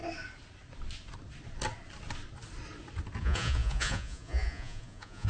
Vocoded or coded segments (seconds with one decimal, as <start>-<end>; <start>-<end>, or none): 3.2-5.3